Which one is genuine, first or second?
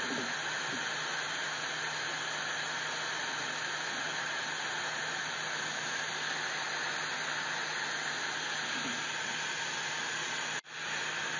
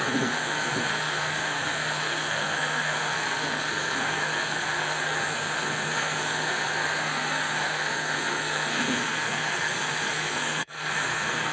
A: first